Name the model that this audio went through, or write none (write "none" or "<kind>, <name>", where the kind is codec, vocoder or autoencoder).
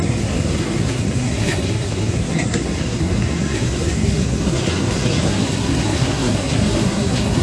codec, SNAC